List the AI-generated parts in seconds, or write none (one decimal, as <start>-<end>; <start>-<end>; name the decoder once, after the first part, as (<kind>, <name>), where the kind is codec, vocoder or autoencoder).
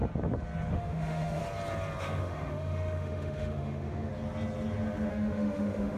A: 0.7-1.4 (autoencoder, DAC-VAE); 2.0-4.1; 5.1-6.0